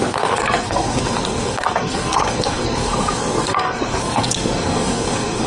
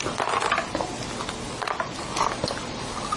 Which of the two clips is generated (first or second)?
first